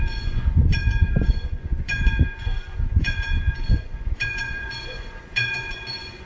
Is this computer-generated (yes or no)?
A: yes